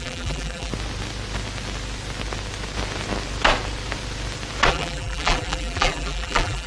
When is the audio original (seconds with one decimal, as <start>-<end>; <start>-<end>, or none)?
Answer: 0.7-4.7